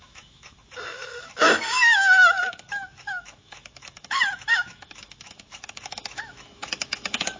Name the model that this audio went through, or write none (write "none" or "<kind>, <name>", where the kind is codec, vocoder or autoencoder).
autoencoder, DAC-VAE